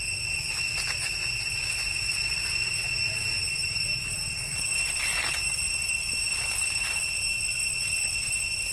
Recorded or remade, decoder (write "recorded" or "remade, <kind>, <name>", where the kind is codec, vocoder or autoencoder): recorded